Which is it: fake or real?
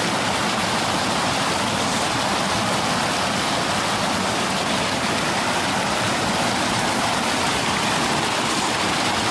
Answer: real